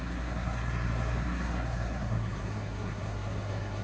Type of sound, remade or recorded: remade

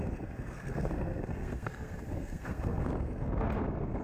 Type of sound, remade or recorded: remade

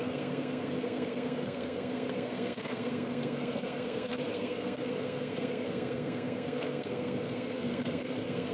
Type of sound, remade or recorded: remade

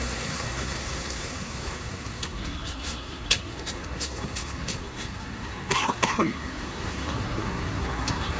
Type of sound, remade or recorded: remade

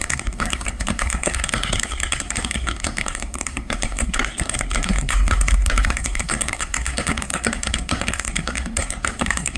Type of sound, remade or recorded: remade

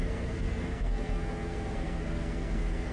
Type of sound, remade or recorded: remade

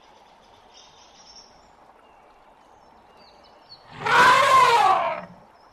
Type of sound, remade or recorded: recorded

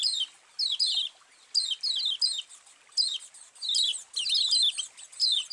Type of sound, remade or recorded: recorded